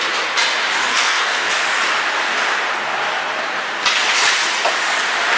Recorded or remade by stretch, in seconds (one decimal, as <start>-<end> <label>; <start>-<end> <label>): 0.0-0.9 recorded; 0.9-1.5 remade; 1.5-5.4 recorded